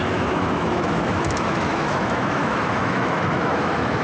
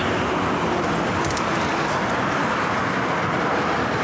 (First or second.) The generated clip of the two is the first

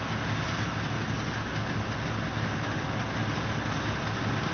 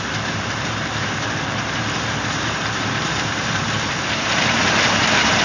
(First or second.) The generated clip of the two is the second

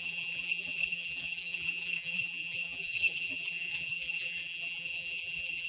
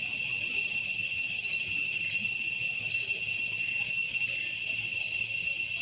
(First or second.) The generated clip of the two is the first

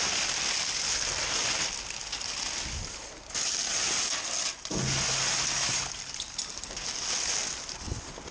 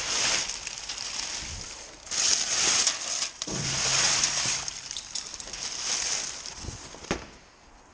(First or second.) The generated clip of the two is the second